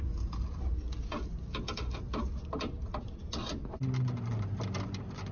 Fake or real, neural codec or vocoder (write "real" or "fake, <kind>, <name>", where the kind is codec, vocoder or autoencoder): real